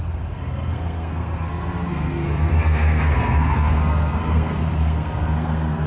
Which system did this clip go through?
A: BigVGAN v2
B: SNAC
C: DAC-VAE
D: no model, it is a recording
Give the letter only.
B